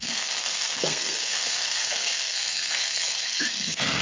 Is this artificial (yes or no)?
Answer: yes